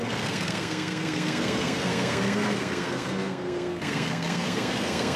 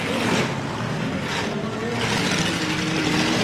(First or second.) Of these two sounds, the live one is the second